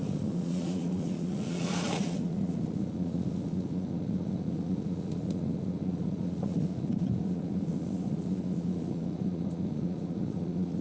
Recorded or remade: remade